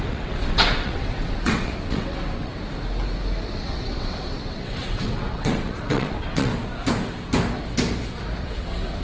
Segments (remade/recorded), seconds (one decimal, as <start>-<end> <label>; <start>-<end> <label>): 0.0-2.5 remade; 2.5-3.5 recorded; 3.5-6.5 remade; 6.5-8.4 recorded; 8.4-9.0 remade

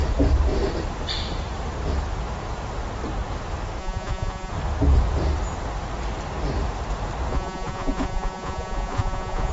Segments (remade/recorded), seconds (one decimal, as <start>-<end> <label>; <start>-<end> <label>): 0.0-3.8 recorded; 3.8-4.5 remade; 4.5-7.3 recorded; 7.3-9.5 remade

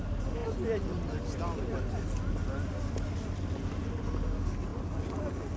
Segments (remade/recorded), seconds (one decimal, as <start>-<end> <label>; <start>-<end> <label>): 0.0-5.6 recorded

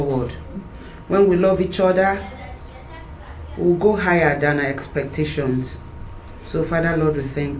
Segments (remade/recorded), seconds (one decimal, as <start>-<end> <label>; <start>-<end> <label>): 0.0-7.6 recorded

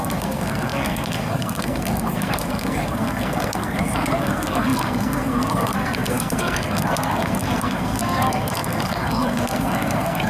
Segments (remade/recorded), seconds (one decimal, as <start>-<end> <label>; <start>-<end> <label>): 0.0-10.3 remade

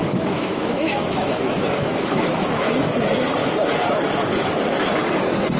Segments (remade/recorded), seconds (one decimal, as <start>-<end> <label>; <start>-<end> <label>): 0.0-2.7 remade; 2.7-5.6 recorded